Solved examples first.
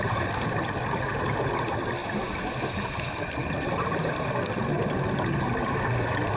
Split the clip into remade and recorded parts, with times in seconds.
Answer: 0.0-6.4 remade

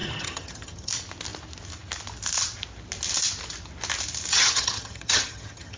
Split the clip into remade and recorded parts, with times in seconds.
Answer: 0.0-0.9 remade; 0.9-4.3 recorded; 4.3-5.8 remade

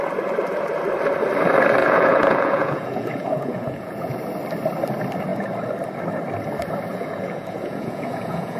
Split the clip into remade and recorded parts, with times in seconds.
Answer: 0.0-1.8 recorded; 1.8-4.2 remade; 4.2-6.9 recorded; 6.9-8.6 remade

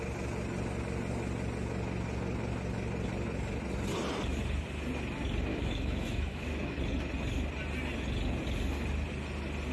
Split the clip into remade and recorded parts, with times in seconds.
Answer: 0.0-5.5 recorded; 5.5-6.8 remade; 6.8-9.7 recorded

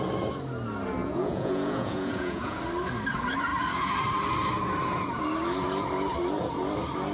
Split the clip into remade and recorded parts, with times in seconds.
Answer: 0.0-1.0 recorded; 1.0-2.6 remade; 2.6-7.1 recorded

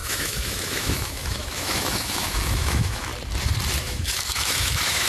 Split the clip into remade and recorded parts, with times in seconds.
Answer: 0.0-3.1 remade; 3.1-3.8 recorded; 3.8-5.1 remade